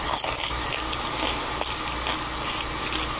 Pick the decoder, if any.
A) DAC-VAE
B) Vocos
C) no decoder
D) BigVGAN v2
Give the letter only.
C